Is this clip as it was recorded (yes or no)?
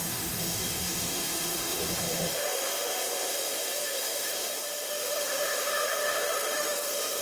no